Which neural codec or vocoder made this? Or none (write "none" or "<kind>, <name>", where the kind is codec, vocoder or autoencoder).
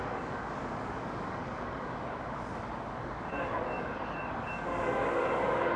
codec, DAC